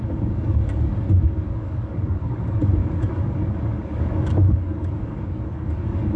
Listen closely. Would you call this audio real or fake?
fake